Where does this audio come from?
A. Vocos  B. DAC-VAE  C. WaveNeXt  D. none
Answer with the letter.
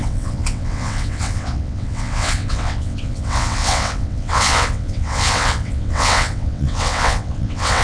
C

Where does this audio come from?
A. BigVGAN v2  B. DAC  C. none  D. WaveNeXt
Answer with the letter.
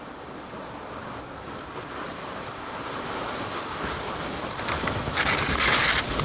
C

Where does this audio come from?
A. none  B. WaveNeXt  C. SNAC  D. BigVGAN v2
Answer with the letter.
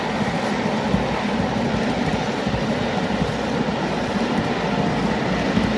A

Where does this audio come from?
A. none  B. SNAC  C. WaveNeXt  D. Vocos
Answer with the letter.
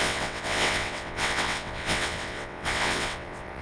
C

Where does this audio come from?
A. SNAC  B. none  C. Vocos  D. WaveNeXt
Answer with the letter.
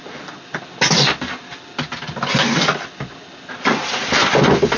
B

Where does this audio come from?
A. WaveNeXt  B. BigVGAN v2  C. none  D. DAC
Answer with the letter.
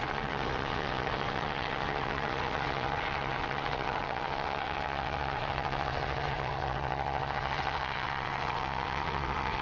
A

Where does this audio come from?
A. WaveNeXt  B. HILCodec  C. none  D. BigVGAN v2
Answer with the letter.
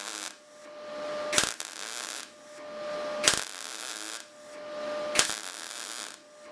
C